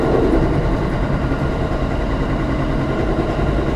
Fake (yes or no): no